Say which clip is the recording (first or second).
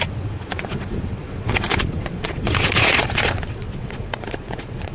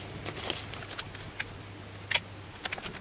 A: second